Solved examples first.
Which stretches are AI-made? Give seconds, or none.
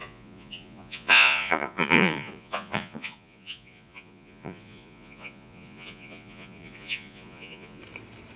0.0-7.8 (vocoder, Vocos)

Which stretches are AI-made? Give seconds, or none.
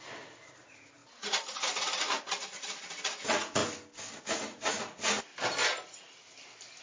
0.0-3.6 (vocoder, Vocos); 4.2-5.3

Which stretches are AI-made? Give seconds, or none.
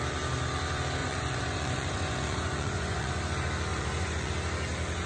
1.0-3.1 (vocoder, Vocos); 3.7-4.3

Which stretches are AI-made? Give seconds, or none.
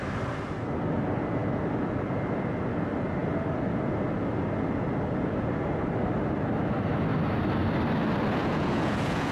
8.4-9.3 (vocoder, Vocos)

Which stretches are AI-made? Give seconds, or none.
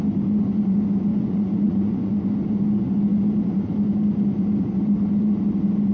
1.1-2.1 (vocoder, Vocos)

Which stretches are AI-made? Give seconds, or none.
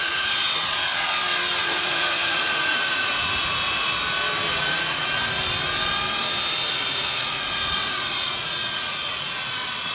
0.0-0.9 (vocoder, Vocos); 1.6-3.9; 4.5-5.2; 6.7-9.9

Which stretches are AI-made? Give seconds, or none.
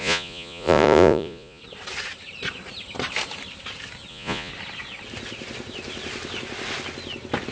0.0-1.6 (vocoder, Vocos); 4.1-4.5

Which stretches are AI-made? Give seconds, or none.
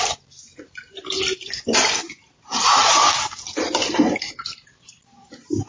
2.0-2.8 (vocoder, Vocos)